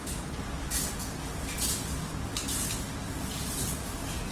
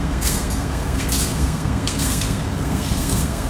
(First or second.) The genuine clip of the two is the first